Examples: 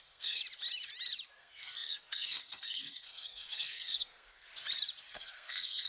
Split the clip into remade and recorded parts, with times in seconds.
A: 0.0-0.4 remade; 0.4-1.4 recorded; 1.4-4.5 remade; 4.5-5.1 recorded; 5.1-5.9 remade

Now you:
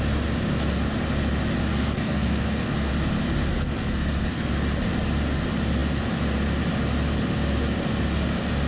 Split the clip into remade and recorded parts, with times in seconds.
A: 0.0-1.7 recorded; 1.7-2.9 remade; 2.9-3.5 recorded; 3.5-4.5 remade; 4.5-8.7 recorded

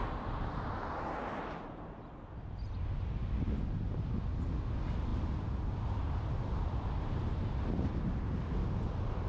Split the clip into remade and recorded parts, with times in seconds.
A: 0.0-9.3 recorded

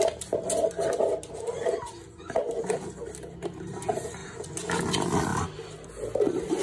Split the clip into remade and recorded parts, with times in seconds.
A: 0.0-6.6 recorded

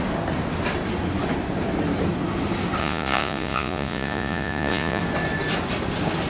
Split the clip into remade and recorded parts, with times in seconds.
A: 0.0-2.8 recorded; 2.8-5.0 remade; 5.0-6.3 recorded

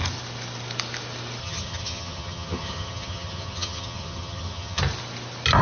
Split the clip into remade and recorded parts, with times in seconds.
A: 0.0-1.4 recorded; 1.4-4.8 remade; 4.8-5.6 recorded

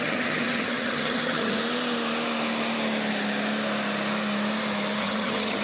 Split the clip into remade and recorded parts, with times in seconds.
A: 0.0-1.6 remade; 1.6-5.0 recorded; 5.0-5.6 remade

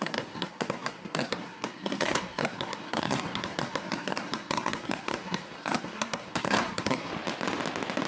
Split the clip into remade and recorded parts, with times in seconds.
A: 0.0-7.1 remade; 7.1-8.1 recorded